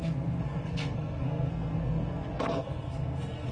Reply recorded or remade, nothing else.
remade